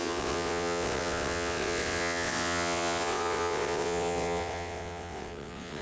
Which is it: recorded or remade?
remade